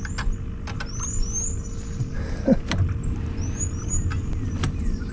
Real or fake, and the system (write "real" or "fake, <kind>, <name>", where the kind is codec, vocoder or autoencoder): real